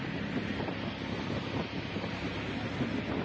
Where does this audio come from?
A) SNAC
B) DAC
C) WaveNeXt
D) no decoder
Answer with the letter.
D